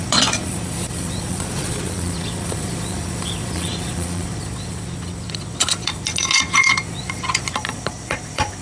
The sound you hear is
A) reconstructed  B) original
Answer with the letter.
A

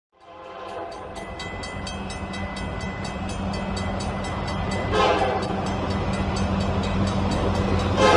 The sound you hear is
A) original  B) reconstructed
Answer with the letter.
A